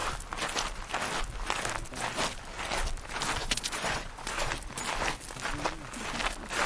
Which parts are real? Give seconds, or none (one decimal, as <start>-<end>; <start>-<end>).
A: 0.0-3.4; 4.5-6.7